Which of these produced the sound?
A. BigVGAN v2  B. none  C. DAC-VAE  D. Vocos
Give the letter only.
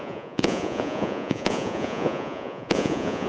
D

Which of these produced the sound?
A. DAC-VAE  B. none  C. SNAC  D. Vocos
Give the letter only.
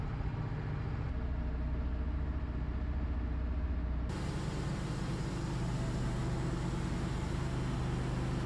B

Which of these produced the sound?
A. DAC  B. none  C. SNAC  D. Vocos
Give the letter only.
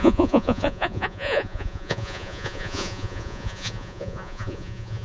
D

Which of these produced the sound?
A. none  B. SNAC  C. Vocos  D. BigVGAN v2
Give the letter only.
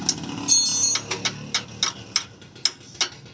A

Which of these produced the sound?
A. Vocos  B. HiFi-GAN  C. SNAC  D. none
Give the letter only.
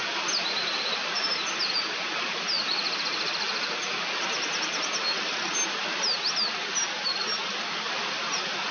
D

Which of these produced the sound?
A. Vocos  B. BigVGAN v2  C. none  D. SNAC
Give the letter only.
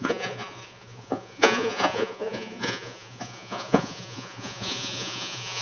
A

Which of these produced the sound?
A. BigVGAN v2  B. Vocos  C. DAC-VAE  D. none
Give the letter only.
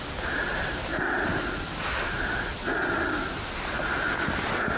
D